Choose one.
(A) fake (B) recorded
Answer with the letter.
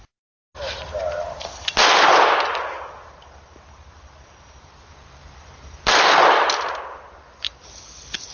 B